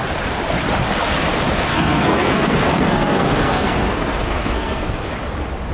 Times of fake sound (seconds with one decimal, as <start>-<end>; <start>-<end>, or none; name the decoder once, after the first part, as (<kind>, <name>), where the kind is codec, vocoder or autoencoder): 1.7-5.1 (codec, SNAC)